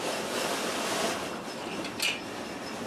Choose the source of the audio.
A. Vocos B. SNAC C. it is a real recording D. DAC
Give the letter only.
C